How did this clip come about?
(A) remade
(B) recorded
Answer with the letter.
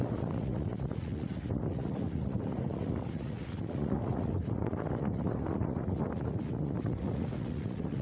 A